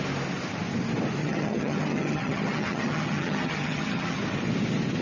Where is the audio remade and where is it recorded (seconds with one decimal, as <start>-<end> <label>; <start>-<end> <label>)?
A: 0.0-1.2 recorded; 1.2-4.2 remade; 4.2-5.0 recorded